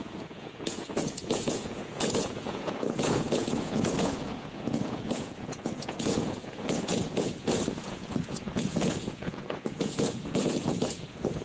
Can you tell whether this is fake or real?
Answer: fake